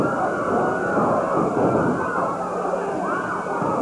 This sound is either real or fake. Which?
real